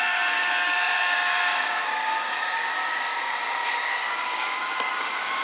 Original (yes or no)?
no